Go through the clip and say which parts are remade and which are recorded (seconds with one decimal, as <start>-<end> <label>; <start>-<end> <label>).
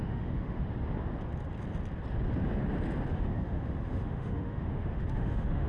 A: 0.0-0.6 remade; 0.6-3.1 recorded; 3.1-5.7 remade